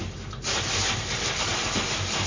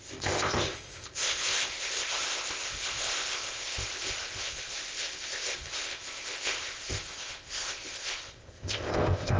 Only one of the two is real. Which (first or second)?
first